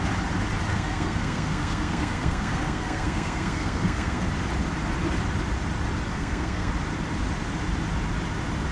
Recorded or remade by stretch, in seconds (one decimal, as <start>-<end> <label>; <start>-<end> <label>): 0.0-0.7 recorded; 0.7-4.3 remade; 4.3-6.1 recorded; 6.1-6.7 remade; 6.7-8.7 recorded